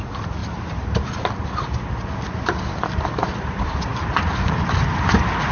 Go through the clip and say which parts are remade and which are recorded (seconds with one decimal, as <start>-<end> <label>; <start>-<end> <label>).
0.0-5.5 recorded